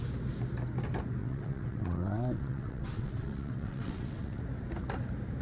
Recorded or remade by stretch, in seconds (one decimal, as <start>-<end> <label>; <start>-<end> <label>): 0.0-1.2 recorded; 1.2-4.4 remade; 4.4-5.4 recorded